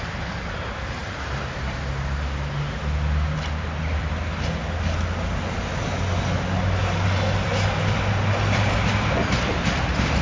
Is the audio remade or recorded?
recorded